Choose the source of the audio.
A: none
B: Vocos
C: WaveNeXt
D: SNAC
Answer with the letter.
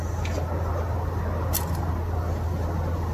A